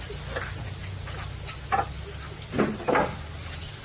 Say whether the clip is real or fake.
real